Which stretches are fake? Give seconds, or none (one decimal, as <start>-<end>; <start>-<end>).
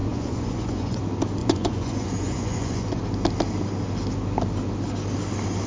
0.0-1.0; 1.4-3.0